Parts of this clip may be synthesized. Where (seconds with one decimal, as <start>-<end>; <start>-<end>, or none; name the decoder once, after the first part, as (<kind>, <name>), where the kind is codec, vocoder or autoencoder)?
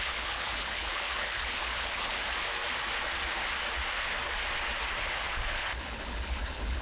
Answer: 0.0-2.2 (codec, HILCodec); 5.0-6.8